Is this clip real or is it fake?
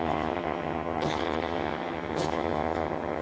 fake